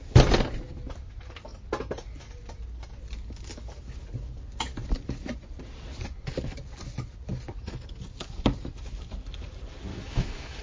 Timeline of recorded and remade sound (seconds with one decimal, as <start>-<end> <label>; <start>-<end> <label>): 0.0-9.9 recorded; 9.9-10.6 remade